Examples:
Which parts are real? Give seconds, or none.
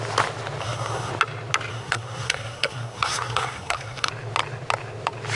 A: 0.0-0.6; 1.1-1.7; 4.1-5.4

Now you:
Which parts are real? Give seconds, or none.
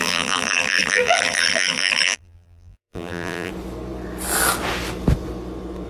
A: 3.5-5.9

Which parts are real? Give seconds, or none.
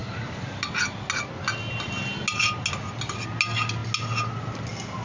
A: 0.0-5.0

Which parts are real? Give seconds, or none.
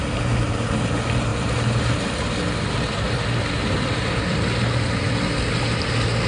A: 0.0-6.3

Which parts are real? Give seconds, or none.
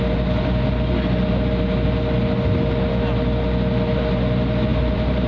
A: 0.0-4.7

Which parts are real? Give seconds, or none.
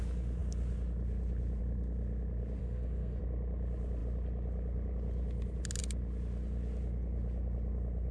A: 0.0-2.6; 3.2-8.1